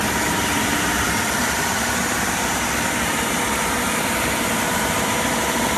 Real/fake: fake